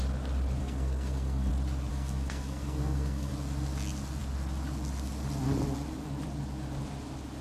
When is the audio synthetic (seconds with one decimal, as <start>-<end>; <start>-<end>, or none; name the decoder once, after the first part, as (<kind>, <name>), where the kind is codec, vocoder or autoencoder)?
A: 0.6-1.5 (codec, SNAC); 1.9-3.3